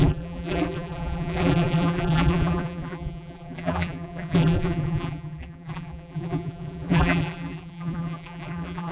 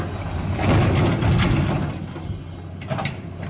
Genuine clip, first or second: second